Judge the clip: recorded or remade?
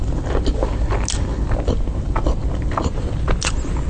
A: recorded